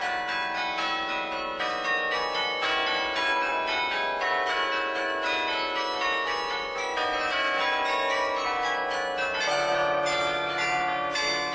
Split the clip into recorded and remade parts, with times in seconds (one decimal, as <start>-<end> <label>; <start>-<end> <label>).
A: 0.0-11.5 recorded